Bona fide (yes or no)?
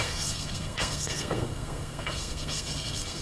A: no